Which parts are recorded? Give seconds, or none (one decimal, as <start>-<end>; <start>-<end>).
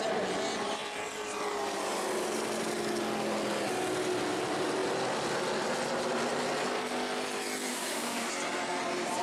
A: 0.0-7.7; 8.3-9.2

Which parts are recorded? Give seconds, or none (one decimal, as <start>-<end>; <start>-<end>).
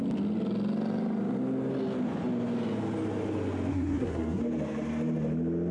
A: 0.0-3.7; 4.4-5.7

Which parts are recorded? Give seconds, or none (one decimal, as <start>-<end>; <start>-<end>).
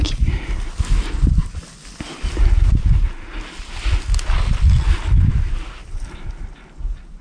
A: 0.0-7.2